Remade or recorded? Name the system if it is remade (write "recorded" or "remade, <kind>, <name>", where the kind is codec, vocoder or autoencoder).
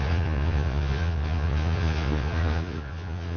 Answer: remade, vocoder, Vocos